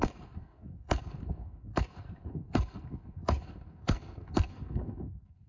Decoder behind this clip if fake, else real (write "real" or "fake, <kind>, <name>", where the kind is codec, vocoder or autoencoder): fake, codec, SNAC